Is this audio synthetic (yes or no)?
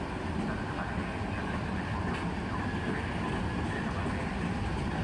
no